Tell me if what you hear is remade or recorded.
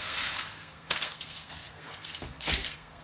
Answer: remade